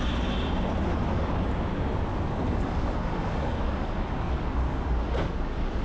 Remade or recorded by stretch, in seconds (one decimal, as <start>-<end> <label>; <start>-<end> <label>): 0.0-0.9 recorded; 0.9-1.5 remade; 1.5-2.1 recorded; 2.1-5.8 remade